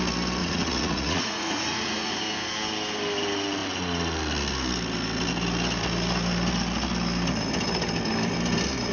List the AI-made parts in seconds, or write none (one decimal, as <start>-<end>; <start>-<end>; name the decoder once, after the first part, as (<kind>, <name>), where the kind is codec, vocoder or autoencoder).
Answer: 0.4-2.1 (vocoder, Vocos)